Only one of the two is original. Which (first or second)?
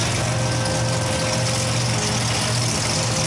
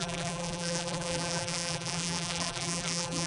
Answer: first